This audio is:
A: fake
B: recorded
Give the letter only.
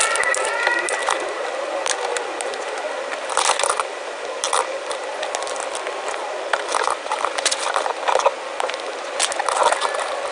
B